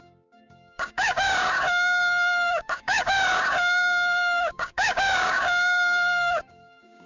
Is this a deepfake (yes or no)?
yes